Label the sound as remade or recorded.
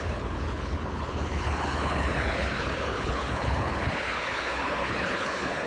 remade